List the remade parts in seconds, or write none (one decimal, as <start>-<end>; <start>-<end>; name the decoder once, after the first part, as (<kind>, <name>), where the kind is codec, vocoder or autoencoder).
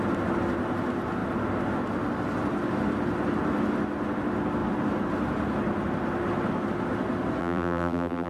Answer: 7.4-8.3 (vocoder, BigVGAN v2)